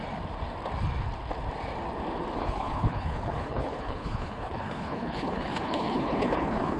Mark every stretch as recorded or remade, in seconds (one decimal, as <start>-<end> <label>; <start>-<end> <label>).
0.0-2.4 recorded; 2.4-6.8 remade